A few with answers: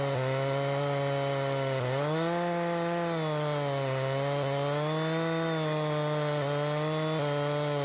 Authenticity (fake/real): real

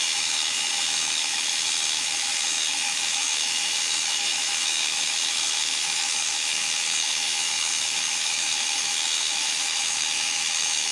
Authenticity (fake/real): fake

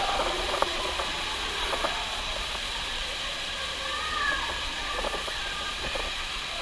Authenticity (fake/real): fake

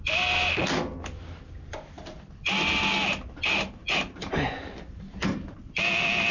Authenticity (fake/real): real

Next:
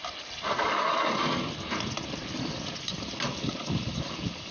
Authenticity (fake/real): real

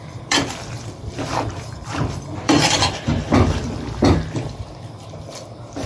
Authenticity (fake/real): fake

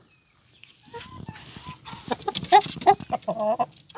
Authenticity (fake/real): real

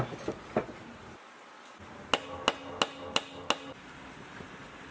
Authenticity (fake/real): real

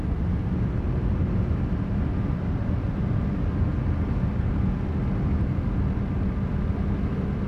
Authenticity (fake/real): real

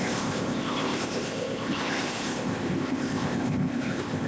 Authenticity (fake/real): fake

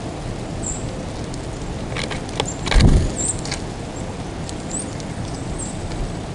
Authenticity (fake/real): real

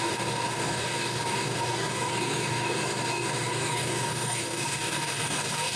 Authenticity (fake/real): fake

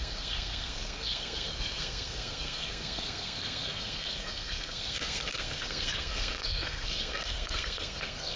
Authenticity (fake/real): fake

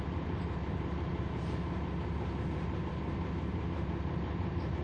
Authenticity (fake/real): real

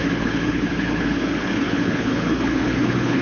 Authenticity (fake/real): fake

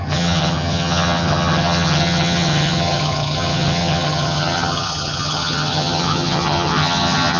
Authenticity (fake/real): fake